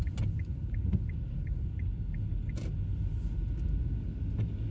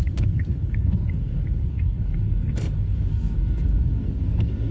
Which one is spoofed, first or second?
second